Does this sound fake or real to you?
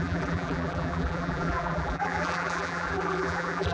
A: fake